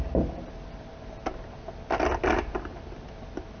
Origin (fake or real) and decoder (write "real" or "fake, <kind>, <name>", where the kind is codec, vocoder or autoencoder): real